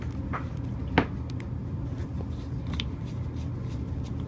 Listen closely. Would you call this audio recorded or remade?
recorded